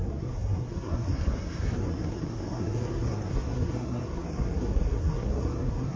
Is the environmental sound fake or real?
fake